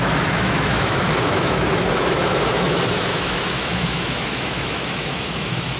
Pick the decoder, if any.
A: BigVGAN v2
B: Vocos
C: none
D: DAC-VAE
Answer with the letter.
D